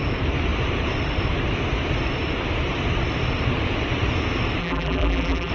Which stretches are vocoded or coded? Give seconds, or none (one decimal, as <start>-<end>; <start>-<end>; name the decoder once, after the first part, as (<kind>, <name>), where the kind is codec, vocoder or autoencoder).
4.6-5.5 (vocoder, BigVGAN v2)